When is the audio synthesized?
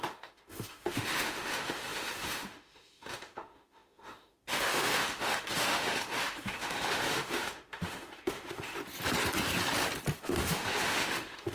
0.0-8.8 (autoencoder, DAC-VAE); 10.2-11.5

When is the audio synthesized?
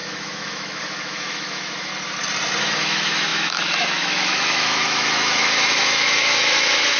0.0-1.9 (autoencoder, DAC-VAE); 2.6-7.0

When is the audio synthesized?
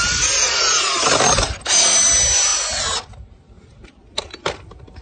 none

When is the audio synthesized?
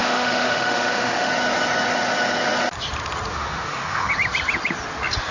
0.0-1.3 (autoencoder, DAC-VAE); 3.3-4.1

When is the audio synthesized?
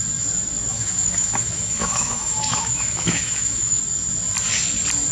0.7-3.8 (autoencoder, DAC-VAE)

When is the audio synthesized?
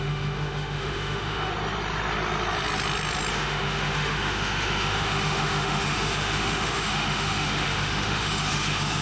0.0-1.5 (autoencoder, DAC-VAE); 3.3-9.0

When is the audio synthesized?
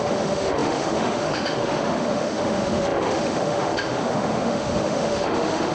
0.0-5.7 (autoencoder, DAC-VAE)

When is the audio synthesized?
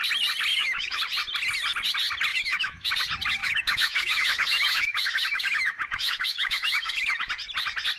0.5-1.0 (autoencoder, DAC-VAE); 2.3-2.9; 3.4-7.3